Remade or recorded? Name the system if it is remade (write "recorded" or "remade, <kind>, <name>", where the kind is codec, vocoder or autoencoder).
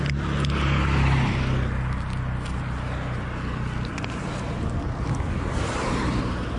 recorded